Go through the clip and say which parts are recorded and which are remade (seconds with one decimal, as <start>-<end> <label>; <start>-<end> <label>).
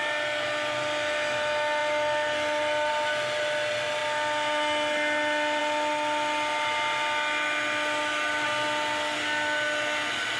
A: 0.0-10.4 recorded